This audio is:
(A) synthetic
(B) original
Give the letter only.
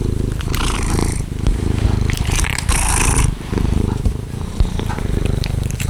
A